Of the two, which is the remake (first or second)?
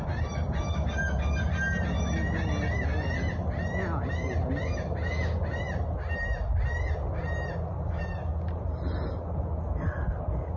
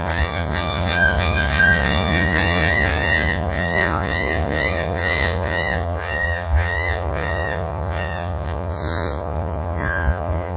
second